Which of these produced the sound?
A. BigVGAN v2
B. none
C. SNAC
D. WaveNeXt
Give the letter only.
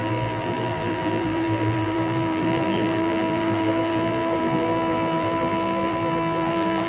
A